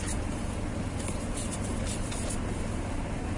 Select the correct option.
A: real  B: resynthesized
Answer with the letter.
A